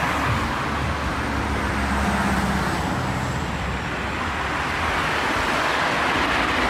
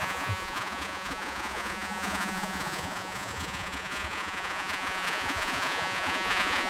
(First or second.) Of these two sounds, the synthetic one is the second